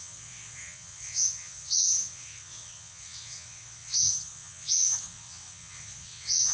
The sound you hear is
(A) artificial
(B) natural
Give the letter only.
A